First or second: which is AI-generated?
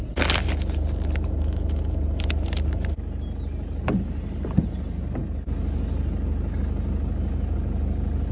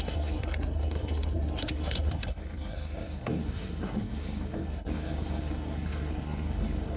second